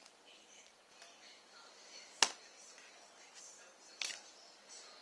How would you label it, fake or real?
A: real